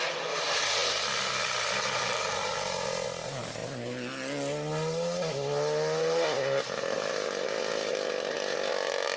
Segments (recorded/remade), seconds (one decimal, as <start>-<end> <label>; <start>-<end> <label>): 0.0-9.2 recorded